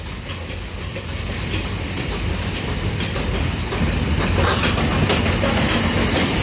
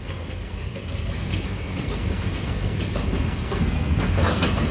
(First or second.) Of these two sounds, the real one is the first